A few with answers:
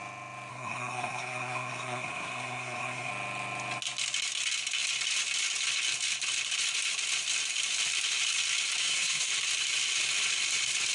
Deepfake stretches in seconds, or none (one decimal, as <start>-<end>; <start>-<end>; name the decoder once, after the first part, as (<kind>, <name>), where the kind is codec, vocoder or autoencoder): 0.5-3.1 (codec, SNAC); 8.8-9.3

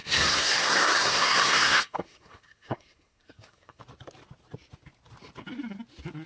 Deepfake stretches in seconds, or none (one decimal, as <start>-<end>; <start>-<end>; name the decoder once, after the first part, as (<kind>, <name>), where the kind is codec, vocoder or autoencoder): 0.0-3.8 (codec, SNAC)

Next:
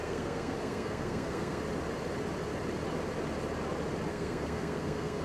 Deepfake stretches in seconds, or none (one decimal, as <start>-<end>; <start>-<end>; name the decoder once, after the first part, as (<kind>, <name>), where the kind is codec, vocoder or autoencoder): 0.0-1.6 (codec, SNAC); 4.1-5.2

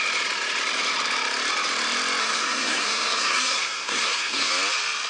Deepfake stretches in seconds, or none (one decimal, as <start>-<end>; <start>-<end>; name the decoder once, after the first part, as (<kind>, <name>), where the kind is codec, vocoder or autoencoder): 2.2-4.5 (codec, SNAC)